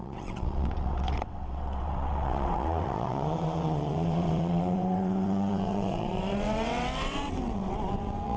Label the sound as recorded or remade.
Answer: remade